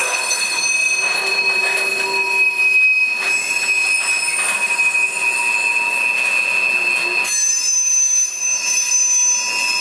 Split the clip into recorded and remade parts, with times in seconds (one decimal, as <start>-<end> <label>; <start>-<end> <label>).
0.0-0.6 remade; 0.6-9.8 recorded